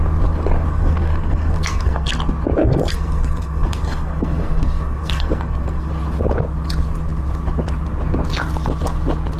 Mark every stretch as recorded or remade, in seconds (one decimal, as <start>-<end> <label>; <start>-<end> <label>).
0.0-0.7 recorded; 0.7-2.1 remade; 2.1-2.6 recorded; 2.6-5.9 remade; 5.9-9.4 recorded